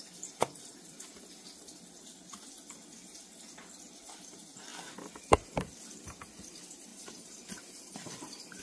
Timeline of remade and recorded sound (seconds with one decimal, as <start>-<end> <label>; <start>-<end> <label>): 0.0-6.9 recorded; 6.9-8.6 remade